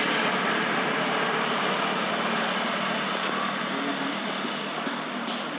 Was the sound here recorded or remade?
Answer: recorded